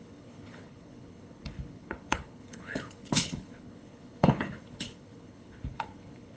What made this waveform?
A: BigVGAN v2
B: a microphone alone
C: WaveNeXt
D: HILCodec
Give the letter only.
D